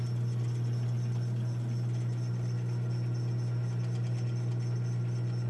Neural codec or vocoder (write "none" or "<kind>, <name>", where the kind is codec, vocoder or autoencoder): none